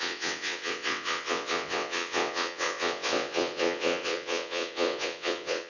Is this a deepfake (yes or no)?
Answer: yes